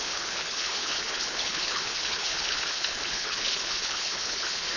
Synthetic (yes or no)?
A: yes